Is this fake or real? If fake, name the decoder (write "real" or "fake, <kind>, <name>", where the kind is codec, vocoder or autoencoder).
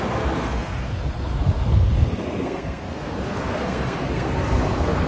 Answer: fake, codec, SNAC